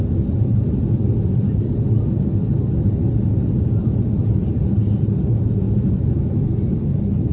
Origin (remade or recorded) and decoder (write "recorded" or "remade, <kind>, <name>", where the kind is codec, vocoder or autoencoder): remade, vocoder, BigVGAN v2